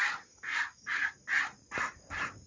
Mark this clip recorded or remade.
recorded